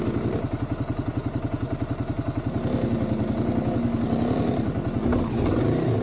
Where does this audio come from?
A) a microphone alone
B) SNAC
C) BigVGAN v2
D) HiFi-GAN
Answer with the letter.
A